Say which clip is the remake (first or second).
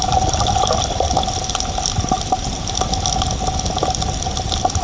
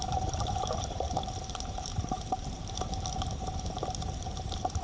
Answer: second